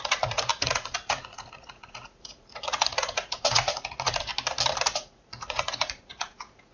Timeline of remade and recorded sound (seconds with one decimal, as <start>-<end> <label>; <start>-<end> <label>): 0.0-4.3 remade; 4.3-4.9 recorded; 4.9-6.7 remade